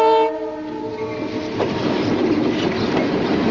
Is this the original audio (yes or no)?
yes